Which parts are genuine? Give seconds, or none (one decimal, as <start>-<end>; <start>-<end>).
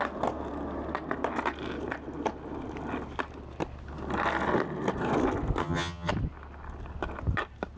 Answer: 0.0-5.6; 6.1-7.8